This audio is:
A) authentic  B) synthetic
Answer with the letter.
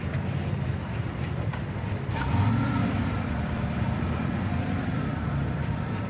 B